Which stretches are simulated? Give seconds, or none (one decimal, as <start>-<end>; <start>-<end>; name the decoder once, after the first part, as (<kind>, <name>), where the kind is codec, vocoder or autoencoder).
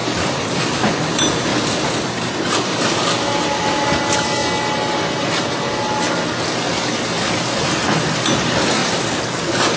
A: 0.0-0.9 (vocoder, BigVGAN v2); 1.5-2.1; 8.8-9.8